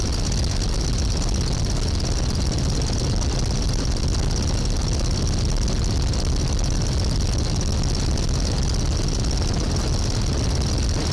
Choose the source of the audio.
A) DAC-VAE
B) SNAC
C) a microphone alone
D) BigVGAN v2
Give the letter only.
C